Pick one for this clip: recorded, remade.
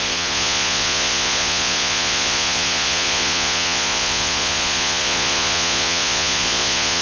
remade